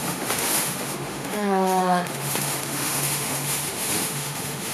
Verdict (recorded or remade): remade